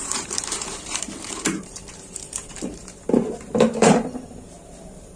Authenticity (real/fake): fake